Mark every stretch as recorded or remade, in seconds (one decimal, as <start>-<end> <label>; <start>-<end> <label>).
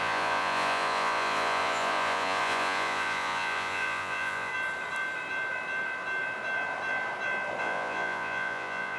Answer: 0.0-4.5 remade; 4.5-7.6 recorded; 7.6-9.0 remade